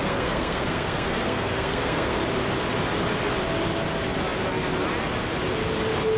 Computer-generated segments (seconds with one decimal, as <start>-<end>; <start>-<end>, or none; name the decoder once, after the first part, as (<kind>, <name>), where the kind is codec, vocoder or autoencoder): 0.0-2.2 (codec, SNAC)

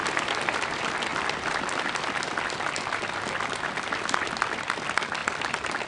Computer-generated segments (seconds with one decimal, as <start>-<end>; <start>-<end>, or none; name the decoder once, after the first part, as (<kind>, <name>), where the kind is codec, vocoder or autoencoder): none